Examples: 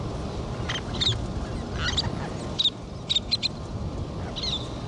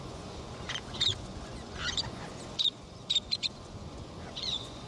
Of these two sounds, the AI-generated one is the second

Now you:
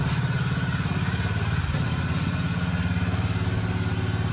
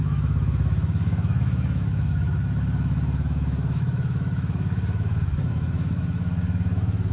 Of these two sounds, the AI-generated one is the second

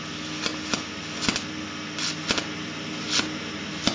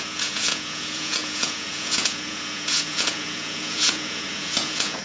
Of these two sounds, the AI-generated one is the second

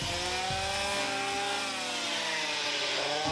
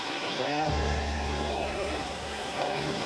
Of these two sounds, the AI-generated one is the second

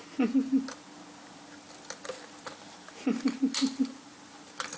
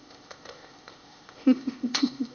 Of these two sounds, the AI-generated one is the second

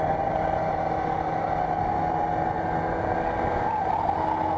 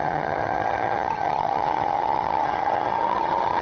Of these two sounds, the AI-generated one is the second